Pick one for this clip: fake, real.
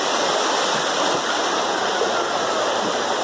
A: real